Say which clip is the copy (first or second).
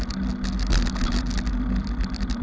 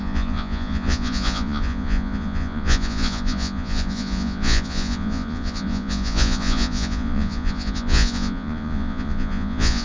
second